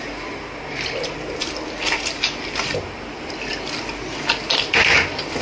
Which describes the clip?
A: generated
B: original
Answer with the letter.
B